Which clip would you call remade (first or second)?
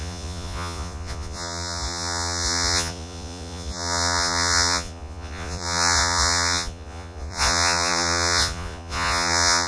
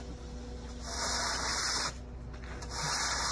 first